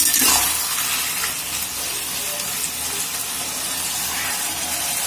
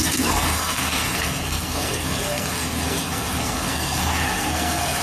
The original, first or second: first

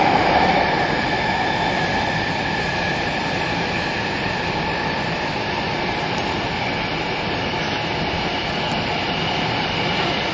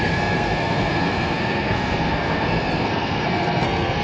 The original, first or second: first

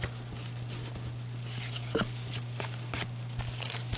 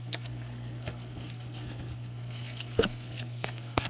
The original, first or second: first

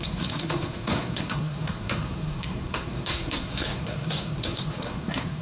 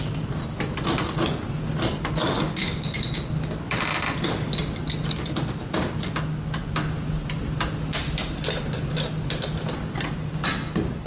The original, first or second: second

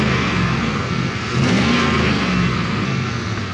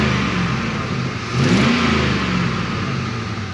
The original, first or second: second